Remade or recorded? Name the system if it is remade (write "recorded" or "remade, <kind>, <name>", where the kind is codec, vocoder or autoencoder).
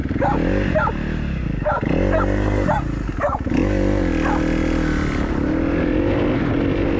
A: recorded